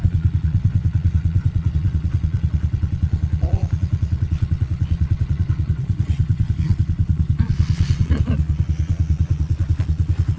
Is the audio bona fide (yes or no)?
no